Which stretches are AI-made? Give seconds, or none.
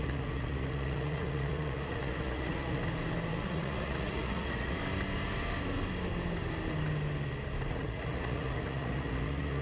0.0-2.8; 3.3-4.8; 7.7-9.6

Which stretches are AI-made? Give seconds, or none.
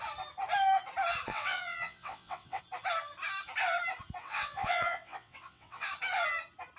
1.3-2.6; 4.2-5.9